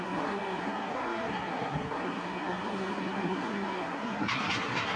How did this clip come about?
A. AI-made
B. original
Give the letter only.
A